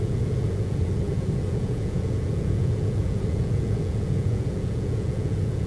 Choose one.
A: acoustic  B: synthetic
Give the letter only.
B